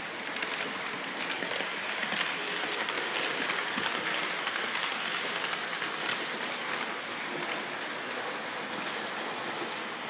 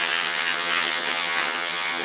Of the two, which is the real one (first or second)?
first